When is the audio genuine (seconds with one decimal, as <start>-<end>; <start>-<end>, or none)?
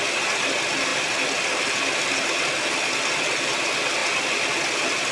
0.0-5.1